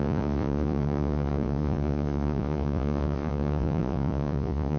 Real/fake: fake